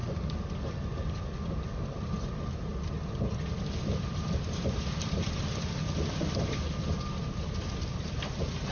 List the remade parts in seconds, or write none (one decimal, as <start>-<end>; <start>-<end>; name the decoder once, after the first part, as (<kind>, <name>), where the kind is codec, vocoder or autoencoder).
none